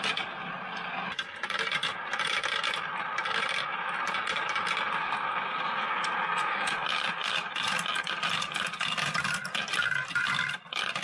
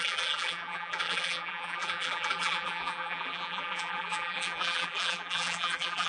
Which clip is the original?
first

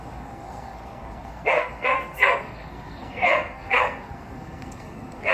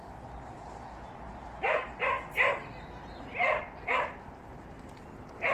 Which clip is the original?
second